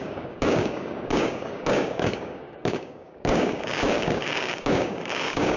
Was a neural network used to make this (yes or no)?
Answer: yes